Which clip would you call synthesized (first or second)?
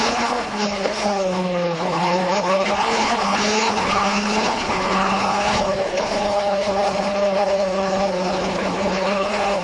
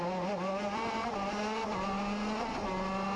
first